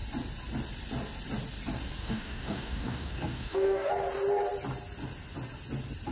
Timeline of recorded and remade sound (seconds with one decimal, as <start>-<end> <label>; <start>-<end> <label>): 0.0-2.0 recorded; 2.0-3.9 remade; 3.9-6.1 recorded